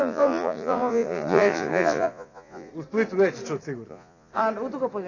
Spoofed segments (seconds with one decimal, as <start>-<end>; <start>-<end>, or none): 0.0-2.7; 3.9-4.4